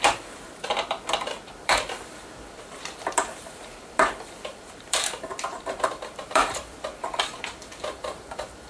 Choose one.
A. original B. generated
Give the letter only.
B